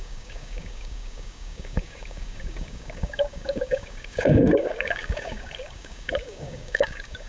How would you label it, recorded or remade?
remade